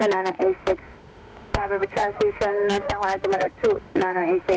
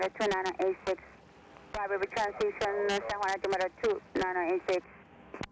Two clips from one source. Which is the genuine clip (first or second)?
second